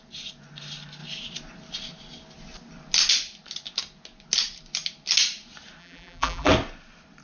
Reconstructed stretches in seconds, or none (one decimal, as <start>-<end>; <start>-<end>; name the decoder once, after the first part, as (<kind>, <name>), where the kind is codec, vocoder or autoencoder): 5.8-6.5 (vocoder, BigVGAN v2)